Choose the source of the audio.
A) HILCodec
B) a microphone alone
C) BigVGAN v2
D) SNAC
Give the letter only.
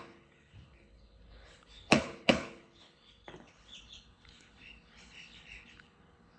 A